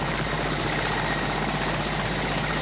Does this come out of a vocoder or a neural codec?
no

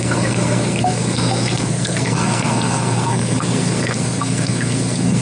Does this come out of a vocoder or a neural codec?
yes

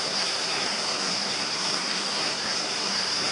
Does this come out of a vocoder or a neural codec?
yes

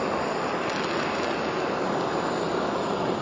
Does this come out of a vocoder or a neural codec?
no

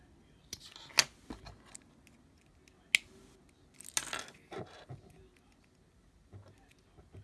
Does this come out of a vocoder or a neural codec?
no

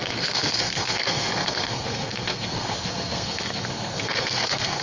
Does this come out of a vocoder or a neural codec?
yes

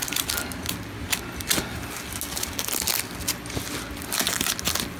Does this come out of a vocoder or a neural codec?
no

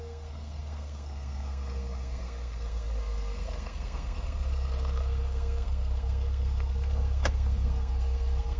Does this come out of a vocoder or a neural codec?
yes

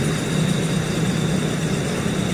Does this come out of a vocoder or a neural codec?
no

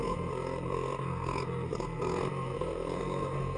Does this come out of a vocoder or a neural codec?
yes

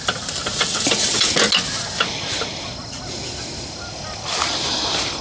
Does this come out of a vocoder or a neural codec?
no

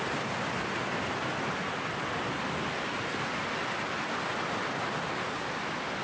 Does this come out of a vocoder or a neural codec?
no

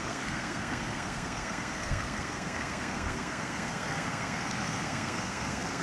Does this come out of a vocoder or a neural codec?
yes